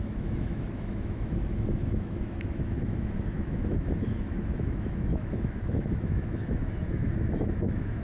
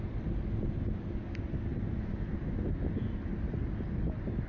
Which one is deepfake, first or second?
first